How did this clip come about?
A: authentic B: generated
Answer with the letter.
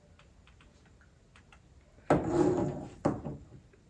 A